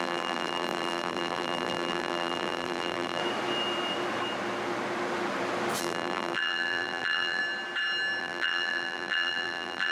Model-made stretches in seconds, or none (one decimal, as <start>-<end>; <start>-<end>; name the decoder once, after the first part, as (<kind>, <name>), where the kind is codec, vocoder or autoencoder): 0.0-3.2 (vocoder, BigVGAN v2); 5.8-7.4; 8.2-9.9